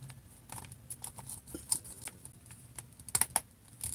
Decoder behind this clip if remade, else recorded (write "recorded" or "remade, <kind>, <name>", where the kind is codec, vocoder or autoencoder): recorded